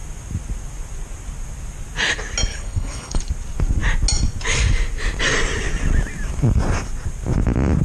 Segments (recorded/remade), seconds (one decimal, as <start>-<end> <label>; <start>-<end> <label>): 0.0-2.5 recorded; 2.5-3.2 remade; 3.2-7.8 recorded